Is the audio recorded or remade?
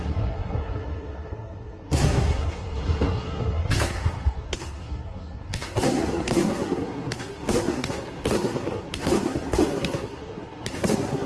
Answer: remade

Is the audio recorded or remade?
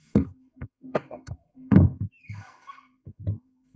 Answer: remade